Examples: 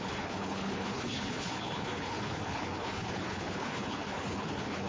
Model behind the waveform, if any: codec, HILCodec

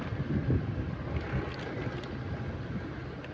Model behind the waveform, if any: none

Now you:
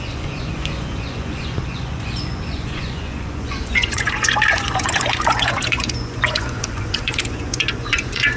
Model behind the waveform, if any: vocoder, Vocos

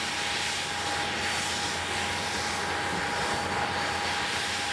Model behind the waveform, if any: none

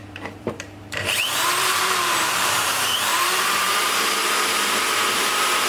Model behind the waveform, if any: vocoder, BigVGAN v2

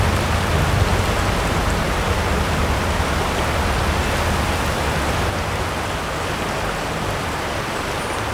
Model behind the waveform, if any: none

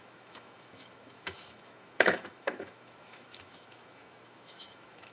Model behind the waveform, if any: autoencoder, DAC-VAE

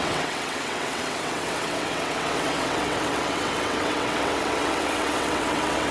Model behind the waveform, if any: vocoder, WaveNeXt